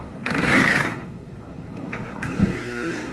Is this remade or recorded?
remade